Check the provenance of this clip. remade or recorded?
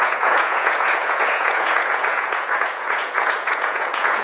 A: remade